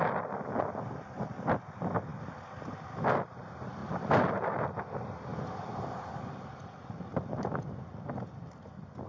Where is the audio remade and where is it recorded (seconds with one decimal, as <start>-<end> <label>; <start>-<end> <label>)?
0.0-3.8 recorded; 3.8-4.8 remade; 4.8-7.1 recorded; 7.1-7.9 remade; 7.9-9.1 recorded